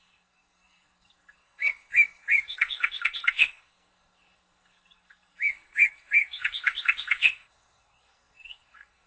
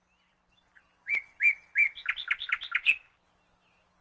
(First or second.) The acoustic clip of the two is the second